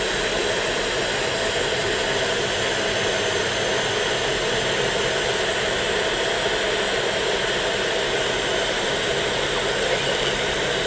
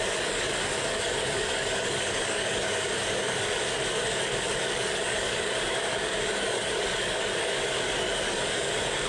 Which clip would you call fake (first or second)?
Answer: second